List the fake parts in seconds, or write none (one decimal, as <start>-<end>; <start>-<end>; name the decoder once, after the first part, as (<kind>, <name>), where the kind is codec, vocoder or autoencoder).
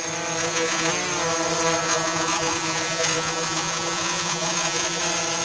0.4-0.9 (vocoder, Vocos); 1.8-5.0